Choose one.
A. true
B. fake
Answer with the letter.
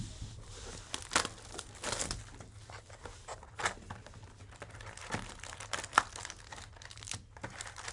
A